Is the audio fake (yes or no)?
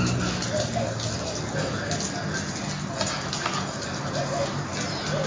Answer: no